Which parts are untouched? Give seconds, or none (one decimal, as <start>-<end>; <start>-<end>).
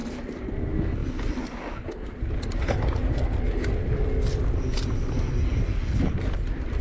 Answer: 0.0-6.8